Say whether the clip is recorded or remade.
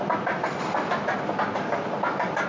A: recorded